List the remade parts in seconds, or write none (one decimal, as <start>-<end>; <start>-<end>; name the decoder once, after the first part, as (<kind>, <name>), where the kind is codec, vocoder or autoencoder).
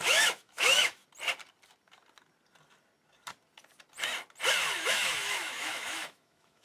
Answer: 0.0-1.0 (autoencoder, DAC-VAE); 4.9-6.6